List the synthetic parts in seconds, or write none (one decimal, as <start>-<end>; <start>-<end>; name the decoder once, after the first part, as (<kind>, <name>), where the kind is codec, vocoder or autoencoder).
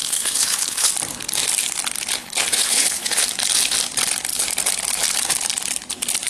0.0-0.9 (codec, HILCodec); 2.2-3.2